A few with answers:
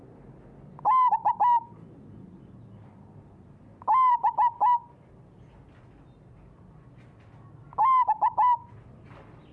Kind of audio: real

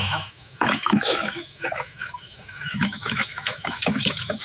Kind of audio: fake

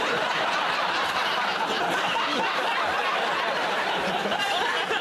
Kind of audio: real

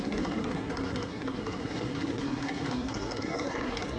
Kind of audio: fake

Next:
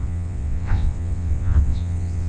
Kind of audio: fake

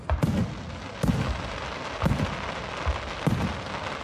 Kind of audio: real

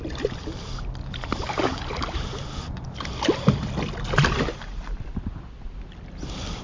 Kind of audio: real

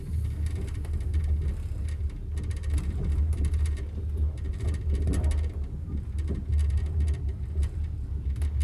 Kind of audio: real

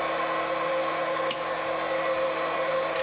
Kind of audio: real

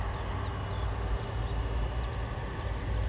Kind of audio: real